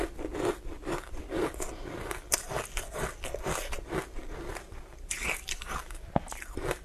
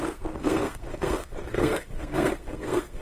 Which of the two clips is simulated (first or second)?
second